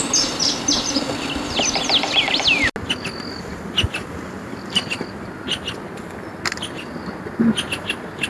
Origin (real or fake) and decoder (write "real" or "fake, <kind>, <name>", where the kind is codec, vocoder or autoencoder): real